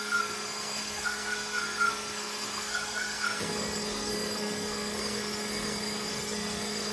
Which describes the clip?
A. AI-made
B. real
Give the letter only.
A